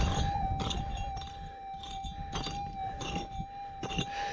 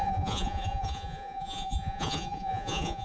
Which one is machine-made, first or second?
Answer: second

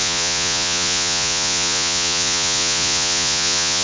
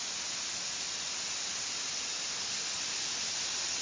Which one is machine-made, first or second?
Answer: first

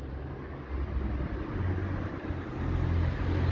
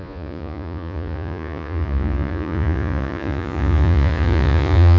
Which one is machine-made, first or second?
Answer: second